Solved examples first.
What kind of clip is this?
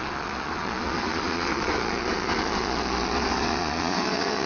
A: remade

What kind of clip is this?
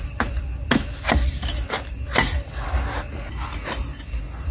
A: recorded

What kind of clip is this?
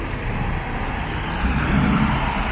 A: recorded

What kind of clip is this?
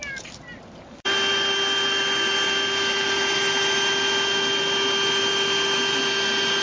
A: recorded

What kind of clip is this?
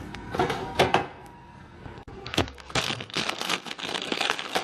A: remade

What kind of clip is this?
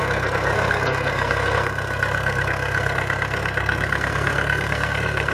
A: remade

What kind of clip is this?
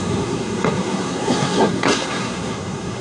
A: remade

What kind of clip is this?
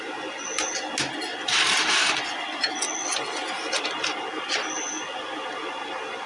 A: recorded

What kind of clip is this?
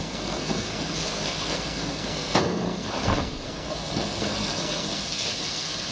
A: remade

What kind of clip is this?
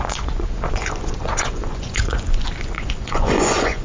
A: remade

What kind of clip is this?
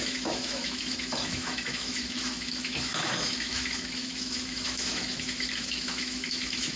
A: remade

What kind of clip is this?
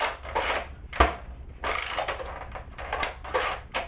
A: recorded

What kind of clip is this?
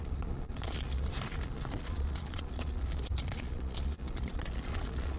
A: remade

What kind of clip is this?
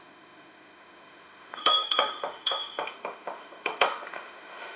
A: remade